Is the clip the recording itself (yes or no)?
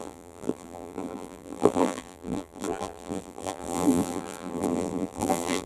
no